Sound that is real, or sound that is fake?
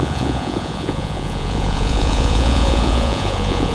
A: fake